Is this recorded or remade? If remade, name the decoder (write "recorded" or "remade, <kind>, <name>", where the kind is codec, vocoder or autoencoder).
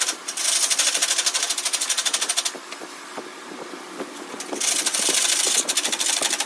recorded